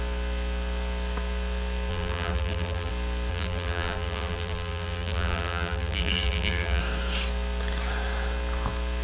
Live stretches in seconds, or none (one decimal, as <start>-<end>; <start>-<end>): 0.0-1.9; 2.9-3.3; 6.8-9.0